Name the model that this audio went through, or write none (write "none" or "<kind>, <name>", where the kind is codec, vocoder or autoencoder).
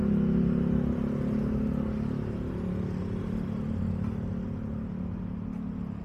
none